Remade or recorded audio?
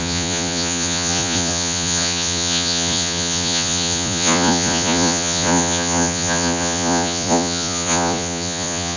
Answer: remade